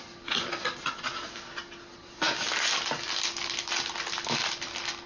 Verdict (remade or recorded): recorded